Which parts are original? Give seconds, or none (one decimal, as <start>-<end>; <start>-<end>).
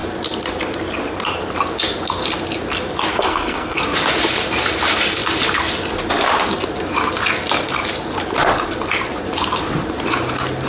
0.0-3.1; 3.8-10.7